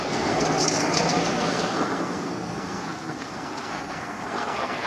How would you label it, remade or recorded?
remade